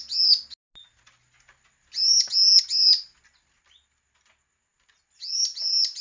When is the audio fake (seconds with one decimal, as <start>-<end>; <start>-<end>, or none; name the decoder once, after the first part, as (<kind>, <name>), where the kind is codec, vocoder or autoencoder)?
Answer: none